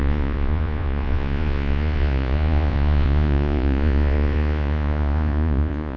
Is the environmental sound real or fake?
fake